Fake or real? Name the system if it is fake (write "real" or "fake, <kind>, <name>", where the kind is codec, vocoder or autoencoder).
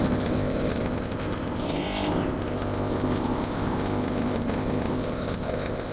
fake, codec, ZipCodec